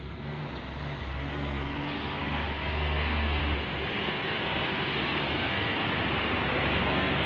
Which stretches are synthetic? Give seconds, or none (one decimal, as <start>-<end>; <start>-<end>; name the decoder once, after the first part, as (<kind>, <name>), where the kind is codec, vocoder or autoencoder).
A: 0.0-0.4 (codec, SNAC); 1.0-3.4; 4.0-5.8; 6.8-7.3